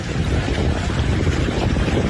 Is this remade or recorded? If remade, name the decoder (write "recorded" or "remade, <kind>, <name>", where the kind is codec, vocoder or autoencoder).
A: remade, vocoder, BigVGAN v2